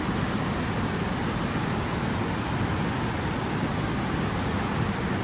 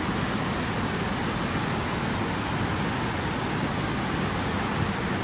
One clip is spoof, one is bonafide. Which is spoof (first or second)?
first